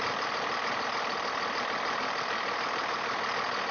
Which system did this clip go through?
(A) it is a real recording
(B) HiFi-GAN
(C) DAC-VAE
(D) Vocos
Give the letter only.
A